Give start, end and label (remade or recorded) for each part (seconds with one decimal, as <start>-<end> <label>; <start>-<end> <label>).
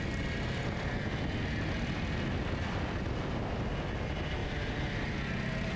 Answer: 0.0-5.8 recorded